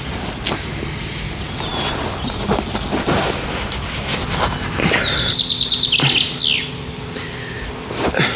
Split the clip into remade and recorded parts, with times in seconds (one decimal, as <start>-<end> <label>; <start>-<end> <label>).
0.0-8.4 recorded